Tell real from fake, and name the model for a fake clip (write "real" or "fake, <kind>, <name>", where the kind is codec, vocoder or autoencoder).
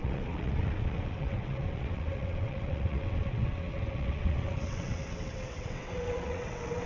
fake, vocoder, WaveNeXt